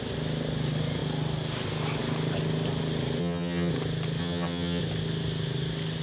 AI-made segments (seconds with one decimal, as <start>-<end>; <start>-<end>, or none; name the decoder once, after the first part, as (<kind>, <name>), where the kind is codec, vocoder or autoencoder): 3.2-3.7 (vocoder, HiFi-GAN); 4.2-4.8